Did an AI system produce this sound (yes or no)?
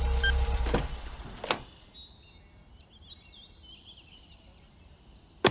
no